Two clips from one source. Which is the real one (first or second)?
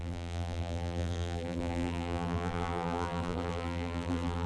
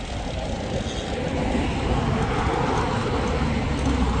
second